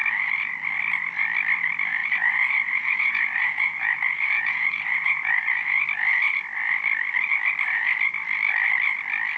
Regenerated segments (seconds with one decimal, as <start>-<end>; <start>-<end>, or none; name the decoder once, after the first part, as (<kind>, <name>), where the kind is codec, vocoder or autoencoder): 2.0-5.8 (vocoder, Vocos)